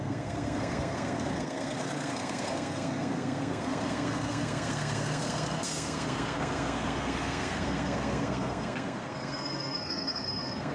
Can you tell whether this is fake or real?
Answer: fake